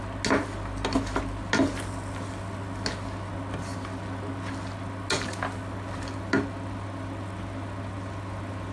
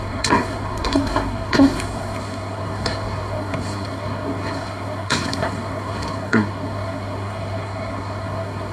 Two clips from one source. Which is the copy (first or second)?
second